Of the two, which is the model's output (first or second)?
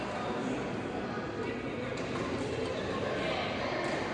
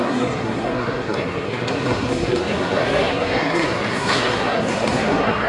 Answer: second